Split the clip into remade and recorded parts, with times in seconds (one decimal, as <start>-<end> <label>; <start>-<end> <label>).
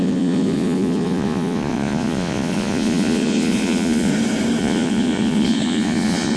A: 0.0-4.1 remade; 4.1-4.6 recorded; 4.6-6.4 remade